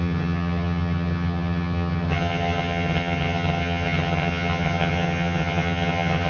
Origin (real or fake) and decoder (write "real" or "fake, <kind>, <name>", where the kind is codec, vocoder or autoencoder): fake, vocoder, HiFi-GAN